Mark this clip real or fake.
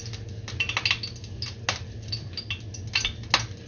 real